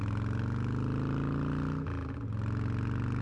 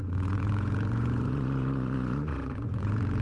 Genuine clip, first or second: first